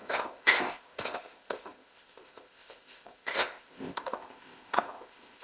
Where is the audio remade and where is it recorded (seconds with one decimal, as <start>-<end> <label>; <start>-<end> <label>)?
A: 0.0-5.4 remade